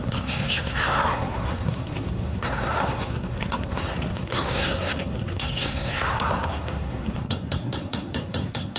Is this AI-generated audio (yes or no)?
yes